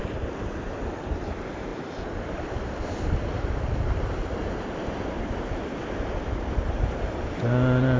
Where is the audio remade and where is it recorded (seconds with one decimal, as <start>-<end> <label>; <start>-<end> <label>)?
0.0-1.7 remade; 1.7-3.5 recorded; 3.5-8.0 remade